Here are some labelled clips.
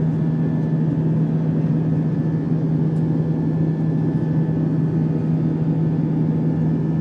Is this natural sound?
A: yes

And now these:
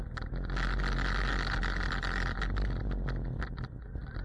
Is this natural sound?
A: yes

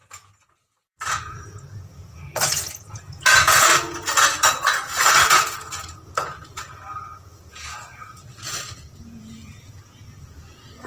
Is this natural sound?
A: no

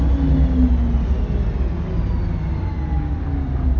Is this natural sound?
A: yes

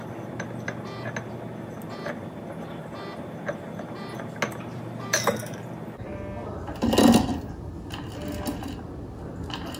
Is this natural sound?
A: yes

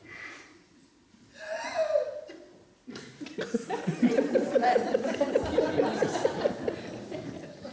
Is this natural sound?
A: yes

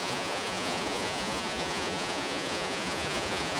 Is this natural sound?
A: no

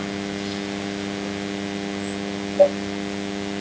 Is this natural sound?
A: yes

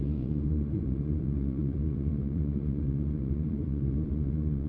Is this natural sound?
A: no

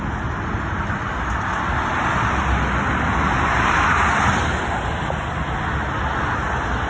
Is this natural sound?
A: yes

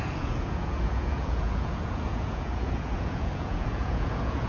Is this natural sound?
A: no